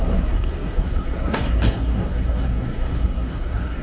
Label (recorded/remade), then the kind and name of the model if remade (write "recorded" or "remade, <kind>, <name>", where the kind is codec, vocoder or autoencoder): remade, codec, SNAC